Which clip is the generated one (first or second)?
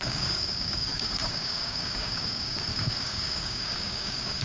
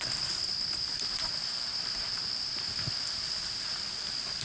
first